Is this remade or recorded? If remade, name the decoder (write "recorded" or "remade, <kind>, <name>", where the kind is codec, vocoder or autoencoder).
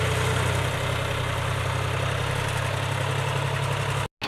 recorded